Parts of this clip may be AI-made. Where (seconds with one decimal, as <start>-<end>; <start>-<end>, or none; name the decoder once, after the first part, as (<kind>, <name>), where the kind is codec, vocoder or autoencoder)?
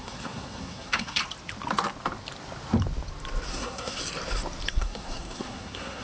0.0-1.2 (codec, SNAC); 3.5-4.0; 4.7-6.0